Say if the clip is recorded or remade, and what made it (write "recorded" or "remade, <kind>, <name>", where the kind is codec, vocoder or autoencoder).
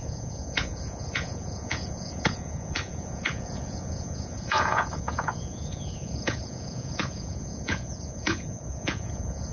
remade, vocoder, Vocos